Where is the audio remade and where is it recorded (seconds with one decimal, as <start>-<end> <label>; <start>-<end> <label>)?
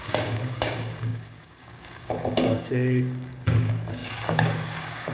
0.0-5.1 remade